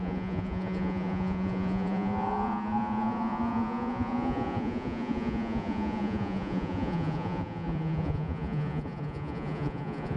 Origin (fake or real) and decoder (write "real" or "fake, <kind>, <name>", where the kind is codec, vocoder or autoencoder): fake, vocoder, Vocos